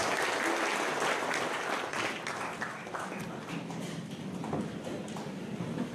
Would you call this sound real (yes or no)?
yes